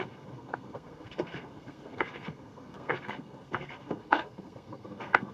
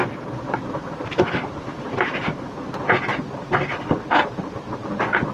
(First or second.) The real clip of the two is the second